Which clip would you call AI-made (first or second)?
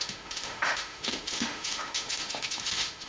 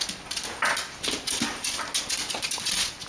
first